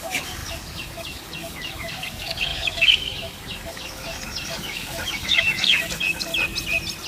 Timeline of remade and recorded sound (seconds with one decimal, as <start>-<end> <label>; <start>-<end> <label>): 0.0-6.3 remade; 6.3-7.1 recorded